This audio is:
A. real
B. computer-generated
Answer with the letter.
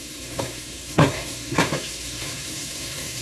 B